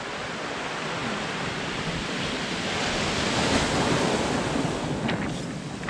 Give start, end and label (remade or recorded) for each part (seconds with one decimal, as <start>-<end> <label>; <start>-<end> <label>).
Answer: 0.0-5.9 recorded